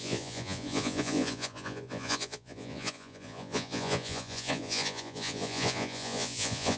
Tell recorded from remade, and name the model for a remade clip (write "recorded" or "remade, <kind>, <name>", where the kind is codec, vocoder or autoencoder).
remade, vocoder, Vocos